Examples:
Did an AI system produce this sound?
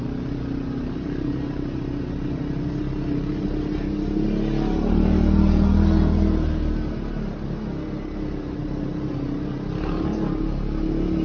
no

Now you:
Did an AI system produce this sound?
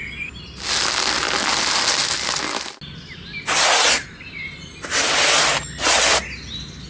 no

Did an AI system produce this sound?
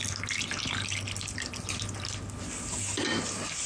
no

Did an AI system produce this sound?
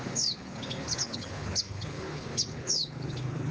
yes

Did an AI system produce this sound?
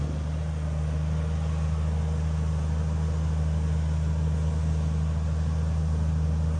no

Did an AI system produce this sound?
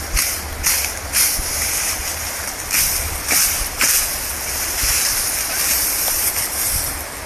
no